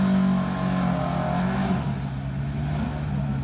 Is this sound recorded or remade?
recorded